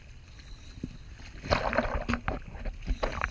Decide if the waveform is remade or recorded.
recorded